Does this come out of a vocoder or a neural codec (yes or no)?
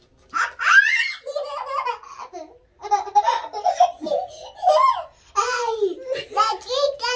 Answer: no